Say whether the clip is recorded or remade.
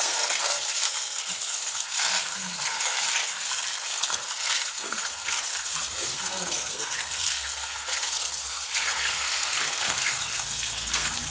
remade